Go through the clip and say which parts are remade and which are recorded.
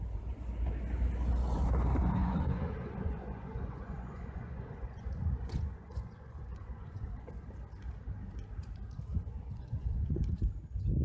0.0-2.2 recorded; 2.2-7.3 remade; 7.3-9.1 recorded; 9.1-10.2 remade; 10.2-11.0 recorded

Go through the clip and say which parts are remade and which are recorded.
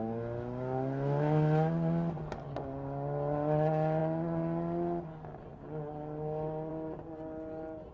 0.0-7.9 recorded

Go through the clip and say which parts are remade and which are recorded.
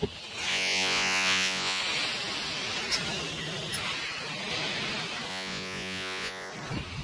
0.0-0.5 recorded; 0.5-1.8 remade; 1.8-5.3 recorded; 5.3-6.5 remade; 6.5-7.0 recorded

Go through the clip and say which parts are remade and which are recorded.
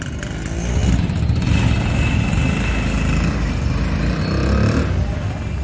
0.0-5.6 recorded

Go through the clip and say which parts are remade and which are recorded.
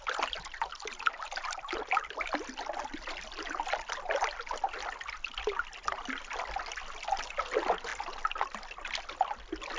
0.0-9.8 recorded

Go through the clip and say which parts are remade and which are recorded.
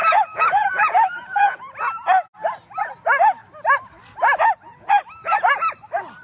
0.0-1.6 remade; 1.6-6.2 recorded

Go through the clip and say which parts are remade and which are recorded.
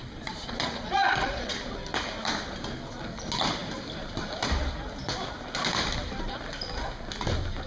0.0-1.6 remade; 1.6-7.7 recorded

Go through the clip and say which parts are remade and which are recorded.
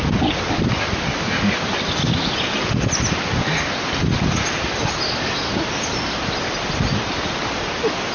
0.0-2.2 recorded; 2.2-2.7 remade; 2.7-8.1 recorded